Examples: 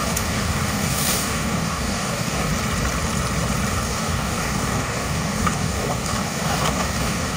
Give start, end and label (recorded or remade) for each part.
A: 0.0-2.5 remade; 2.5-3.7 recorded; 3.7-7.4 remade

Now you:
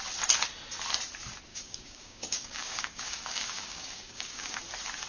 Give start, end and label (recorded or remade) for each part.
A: 0.0-1.5 recorded; 1.5-4.6 remade; 4.6-5.1 recorded

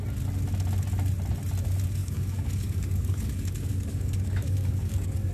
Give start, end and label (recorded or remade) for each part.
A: 0.0-2.0 recorded; 2.0-5.3 remade

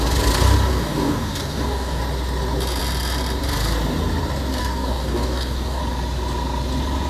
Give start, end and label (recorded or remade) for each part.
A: 0.0-0.7 recorded; 0.7-2.0 remade; 2.0-4.6 recorded; 4.6-5.8 remade; 5.8-7.1 recorded